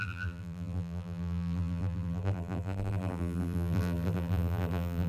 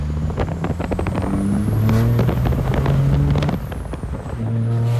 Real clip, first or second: second